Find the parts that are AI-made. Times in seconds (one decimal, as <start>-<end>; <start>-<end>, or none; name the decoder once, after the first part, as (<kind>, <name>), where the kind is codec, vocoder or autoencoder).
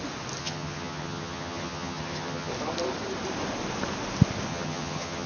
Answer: 0.4-2.5 (vocoder, HiFi-GAN); 4.5-5.3